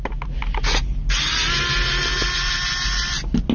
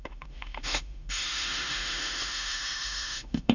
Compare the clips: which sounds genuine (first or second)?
first